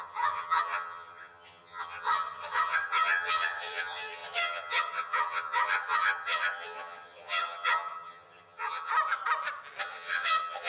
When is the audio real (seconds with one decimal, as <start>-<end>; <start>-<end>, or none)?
8.9-9.8